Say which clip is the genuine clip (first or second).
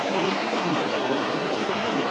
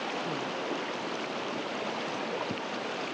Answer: second